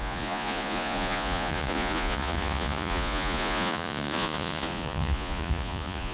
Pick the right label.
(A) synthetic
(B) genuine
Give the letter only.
A